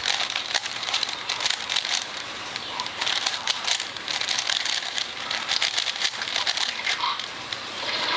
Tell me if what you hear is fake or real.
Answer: fake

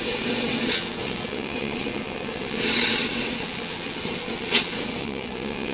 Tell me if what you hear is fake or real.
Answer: fake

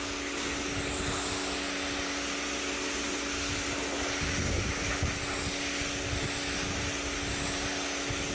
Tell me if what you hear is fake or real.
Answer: real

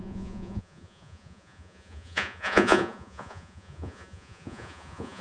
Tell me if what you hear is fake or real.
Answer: fake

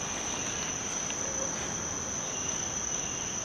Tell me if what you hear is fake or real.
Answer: real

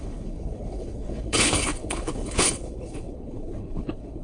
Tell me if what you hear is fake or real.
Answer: fake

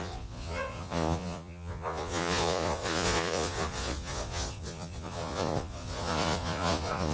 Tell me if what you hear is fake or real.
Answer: fake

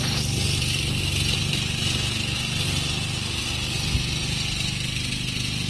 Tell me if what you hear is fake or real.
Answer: real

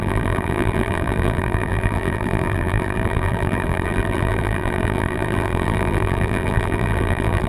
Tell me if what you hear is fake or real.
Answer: fake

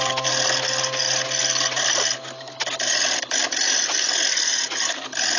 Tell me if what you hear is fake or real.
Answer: real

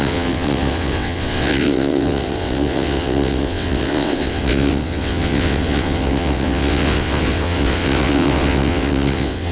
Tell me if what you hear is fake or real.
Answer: fake